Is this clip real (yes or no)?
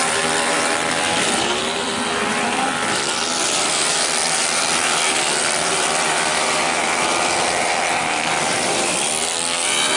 no